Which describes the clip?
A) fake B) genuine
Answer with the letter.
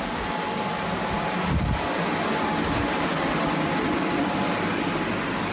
B